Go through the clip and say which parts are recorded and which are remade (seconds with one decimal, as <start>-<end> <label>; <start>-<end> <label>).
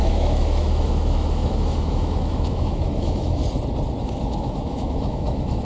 0.0-3.4 remade; 3.4-4.0 recorded; 4.0-5.6 remade